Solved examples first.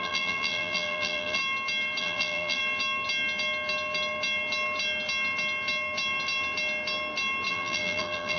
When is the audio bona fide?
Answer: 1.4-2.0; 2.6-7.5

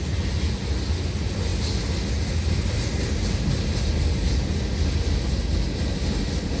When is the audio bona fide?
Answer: 0.0-6.6